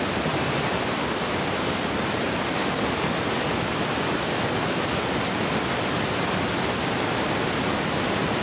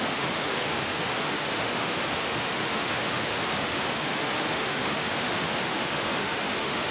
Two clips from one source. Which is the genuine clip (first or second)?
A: first